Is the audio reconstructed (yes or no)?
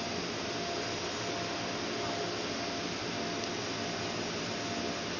no